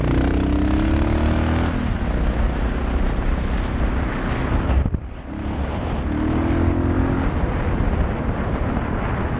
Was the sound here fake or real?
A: real